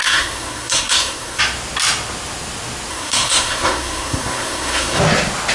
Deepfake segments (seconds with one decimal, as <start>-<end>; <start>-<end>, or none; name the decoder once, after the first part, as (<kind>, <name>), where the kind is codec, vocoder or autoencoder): 0.0-1.4 (codec, SNAC); 2.9-5.0